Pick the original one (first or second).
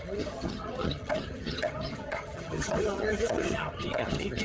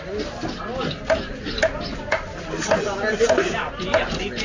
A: second